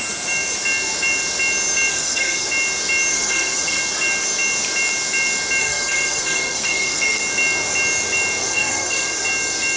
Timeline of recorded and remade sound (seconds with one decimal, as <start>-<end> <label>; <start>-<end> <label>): 0.0-1.9 recorded; 1.9-2.5 remade; 2.5-3.1 recorded; 3.1-3.8 remade; 3.8-5.6 recorded; 5.6-7.2 remade; 7.2-8.4 recorded; 8.4-9.2 remade; 9.2-9.8 recorded